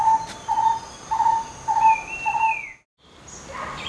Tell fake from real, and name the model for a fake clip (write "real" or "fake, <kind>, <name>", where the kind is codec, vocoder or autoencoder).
real